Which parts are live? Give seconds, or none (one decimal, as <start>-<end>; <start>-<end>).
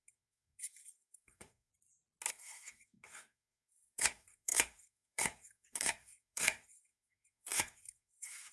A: 1.7-2.3